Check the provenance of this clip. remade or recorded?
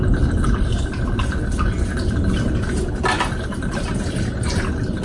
recorded